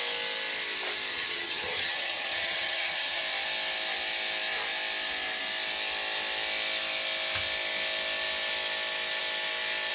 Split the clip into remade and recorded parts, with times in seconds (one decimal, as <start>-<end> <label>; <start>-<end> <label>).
0.0-1.1 recorded; 1.1-3.2 remade; 3.2-9.9 recorded